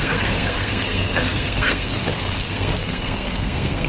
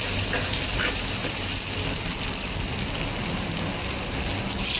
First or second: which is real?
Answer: second